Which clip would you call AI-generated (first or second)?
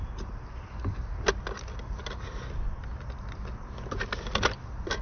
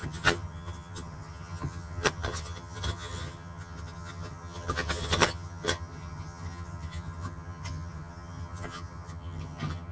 second